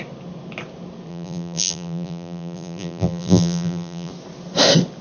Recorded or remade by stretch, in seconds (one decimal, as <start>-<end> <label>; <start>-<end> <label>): 0.0-1.1 recorded; 1.1-4.1 remade; 4.1-5.0 recorded